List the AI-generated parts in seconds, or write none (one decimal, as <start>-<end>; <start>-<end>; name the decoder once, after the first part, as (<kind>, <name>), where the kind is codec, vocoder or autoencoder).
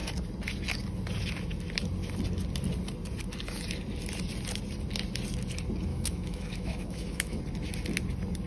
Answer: 5.9-7.4 (autoencoder, DAC-VAE)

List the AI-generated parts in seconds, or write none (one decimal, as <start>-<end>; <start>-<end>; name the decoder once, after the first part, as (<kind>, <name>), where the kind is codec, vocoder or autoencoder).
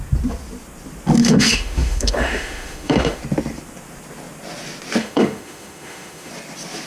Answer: 1.2-3.2 (autoencoder, DAC-VAE); 5.0-6.3